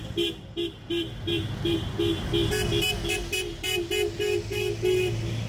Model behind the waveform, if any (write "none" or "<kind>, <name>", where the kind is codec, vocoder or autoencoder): none